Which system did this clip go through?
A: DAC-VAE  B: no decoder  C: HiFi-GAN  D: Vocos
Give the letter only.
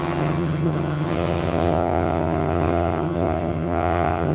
C